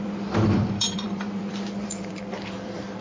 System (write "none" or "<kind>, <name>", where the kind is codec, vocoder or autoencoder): vocoder, BigVGAN v2